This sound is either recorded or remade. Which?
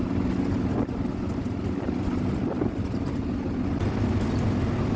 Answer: recorded